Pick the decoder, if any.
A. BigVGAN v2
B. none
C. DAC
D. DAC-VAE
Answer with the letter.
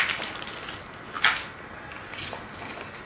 B